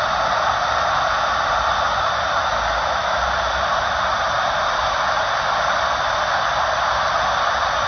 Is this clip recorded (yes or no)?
yes